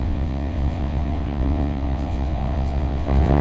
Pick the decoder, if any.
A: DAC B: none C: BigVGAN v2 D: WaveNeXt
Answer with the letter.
D